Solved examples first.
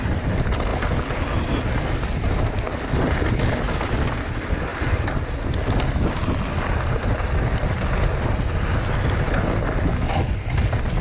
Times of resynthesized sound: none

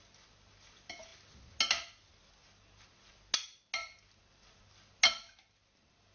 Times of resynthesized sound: none

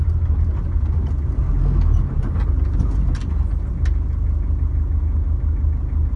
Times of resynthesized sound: none

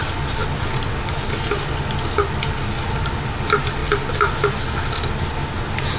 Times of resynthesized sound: none

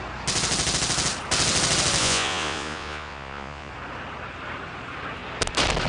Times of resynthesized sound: 2.0-3.7 (vocoder, Vocos)

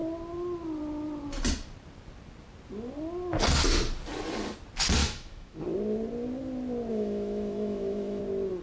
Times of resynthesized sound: 5.0-5.6 (autoencoder, DAC-VAE); 6.9-8.2

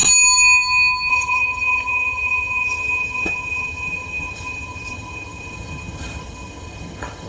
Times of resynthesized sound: 1.1-7.3 (vocoder, HiFi-GAN)

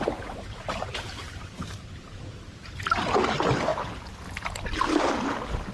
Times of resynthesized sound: 1.2-2.0 (vocoder, BigVGAN v2)